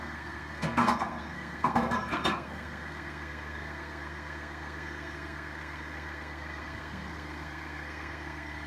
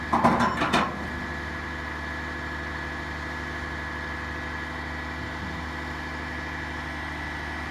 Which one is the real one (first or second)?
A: second